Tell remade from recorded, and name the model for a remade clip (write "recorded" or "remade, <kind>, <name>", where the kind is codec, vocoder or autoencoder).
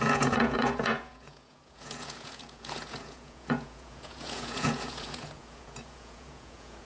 remade, vocoder, Vocos